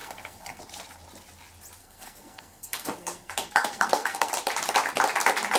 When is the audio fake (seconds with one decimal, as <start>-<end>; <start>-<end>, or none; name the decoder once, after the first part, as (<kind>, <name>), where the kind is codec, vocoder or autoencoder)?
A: 0.0-0.6 (codec, SNAC); 1.8-4.3